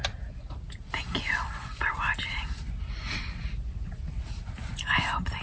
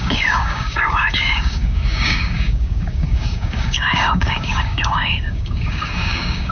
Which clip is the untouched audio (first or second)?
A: first